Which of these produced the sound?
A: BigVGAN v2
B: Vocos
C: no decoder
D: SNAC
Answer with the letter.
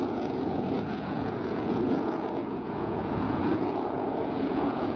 B